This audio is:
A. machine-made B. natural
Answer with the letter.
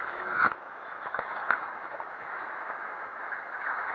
A